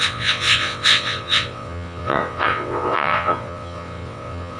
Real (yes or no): no